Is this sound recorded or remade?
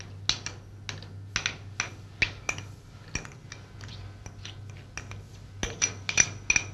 recorded